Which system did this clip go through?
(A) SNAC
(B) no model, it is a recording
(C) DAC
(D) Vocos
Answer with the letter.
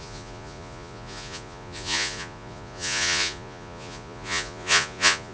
D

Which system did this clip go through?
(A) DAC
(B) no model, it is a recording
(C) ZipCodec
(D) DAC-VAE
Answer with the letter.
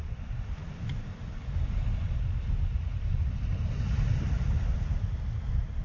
B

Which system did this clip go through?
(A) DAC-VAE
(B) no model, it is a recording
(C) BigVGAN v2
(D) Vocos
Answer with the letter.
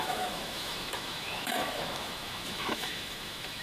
A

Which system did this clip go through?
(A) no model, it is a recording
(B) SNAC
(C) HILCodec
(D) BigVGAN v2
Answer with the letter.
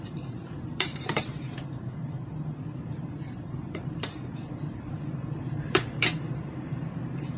D